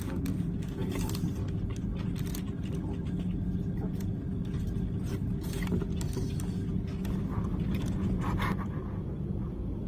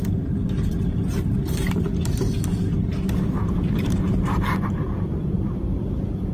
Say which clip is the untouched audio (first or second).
first